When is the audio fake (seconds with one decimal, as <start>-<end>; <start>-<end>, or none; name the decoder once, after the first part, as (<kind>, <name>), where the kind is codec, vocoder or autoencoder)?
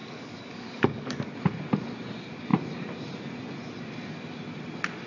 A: 0.0-1.3 (codec, DAC)